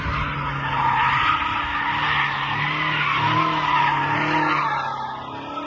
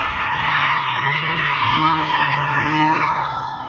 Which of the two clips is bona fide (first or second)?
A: first